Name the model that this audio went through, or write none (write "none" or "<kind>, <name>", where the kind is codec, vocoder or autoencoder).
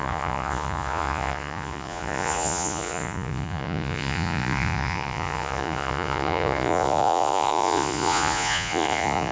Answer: vocoder, Vocos